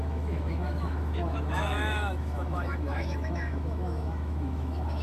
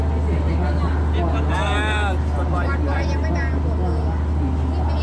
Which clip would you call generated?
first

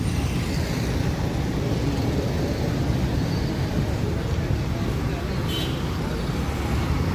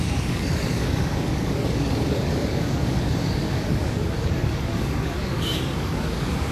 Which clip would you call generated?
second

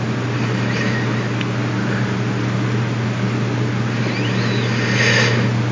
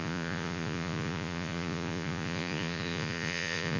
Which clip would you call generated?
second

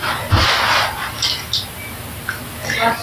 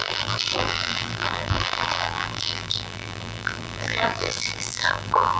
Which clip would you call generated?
second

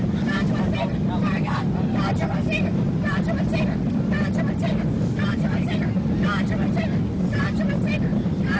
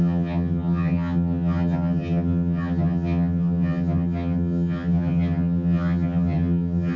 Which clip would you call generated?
second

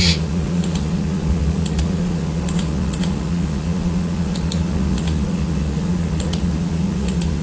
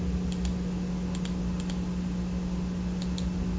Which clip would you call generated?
first